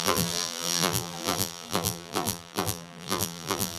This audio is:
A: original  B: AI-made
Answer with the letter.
B